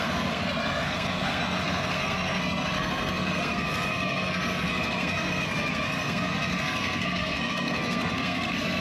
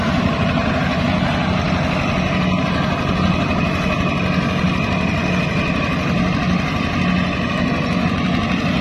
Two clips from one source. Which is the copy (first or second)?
first